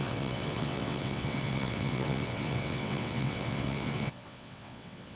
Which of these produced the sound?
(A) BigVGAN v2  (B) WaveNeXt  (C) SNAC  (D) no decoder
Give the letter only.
B